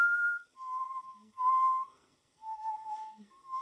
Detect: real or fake fake